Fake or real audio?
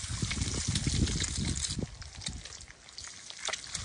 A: real